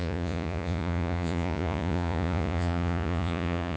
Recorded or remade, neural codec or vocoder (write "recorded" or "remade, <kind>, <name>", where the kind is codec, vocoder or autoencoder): remade, vocoder, Vocos